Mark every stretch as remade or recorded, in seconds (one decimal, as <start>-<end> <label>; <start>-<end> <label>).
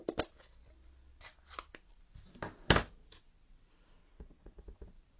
0.0-4.0 recorded; 4.0-4.6 remade; 4.6-5.2 recorded